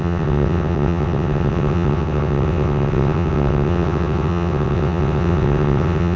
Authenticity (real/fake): fake